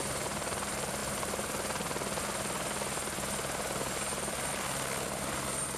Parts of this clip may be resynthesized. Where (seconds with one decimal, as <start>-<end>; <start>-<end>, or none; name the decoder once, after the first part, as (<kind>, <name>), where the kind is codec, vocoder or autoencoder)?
none